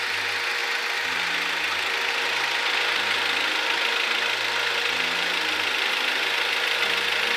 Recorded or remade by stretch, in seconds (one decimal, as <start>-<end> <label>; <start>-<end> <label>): 0.0-7.4 recorded